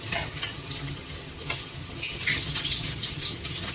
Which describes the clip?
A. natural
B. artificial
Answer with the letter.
B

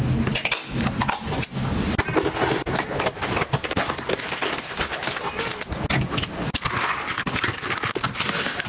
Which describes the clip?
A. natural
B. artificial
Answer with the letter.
A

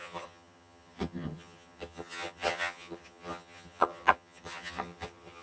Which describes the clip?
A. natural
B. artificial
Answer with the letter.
B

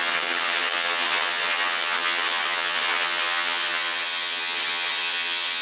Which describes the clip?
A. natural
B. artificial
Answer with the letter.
B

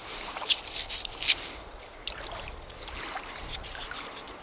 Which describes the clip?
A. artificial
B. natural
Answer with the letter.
B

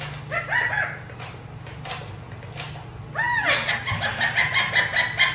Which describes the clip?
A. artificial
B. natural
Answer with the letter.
B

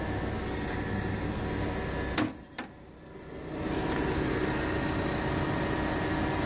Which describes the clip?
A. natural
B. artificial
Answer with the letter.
A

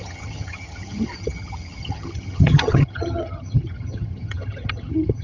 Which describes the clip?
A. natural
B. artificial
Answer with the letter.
B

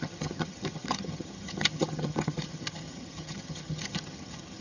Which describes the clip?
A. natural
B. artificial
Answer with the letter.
B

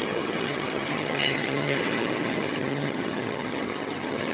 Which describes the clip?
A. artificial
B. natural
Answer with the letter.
A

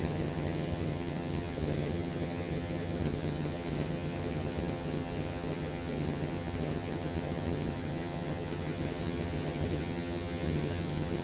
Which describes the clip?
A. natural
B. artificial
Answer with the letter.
B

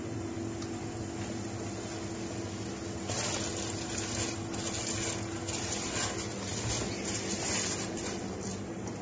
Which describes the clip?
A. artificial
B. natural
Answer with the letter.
B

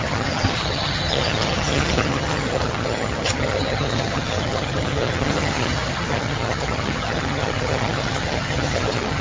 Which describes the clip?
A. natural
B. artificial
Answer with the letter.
B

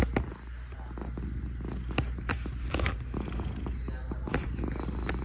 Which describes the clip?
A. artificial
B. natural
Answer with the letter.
B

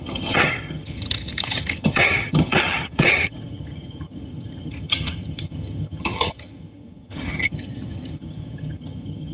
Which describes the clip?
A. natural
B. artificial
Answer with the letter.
B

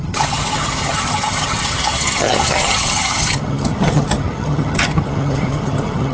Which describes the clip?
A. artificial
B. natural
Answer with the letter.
A